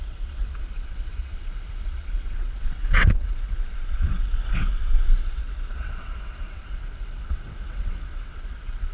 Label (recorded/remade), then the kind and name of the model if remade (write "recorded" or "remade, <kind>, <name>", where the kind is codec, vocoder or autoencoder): remade, vocoder, WaveNeXt